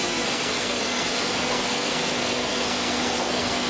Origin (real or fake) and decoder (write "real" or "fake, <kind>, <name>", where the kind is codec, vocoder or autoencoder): fake, codec, SNAC